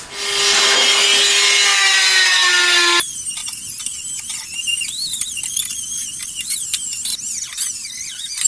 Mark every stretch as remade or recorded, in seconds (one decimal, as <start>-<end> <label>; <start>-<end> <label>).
0.0-8.5 recorded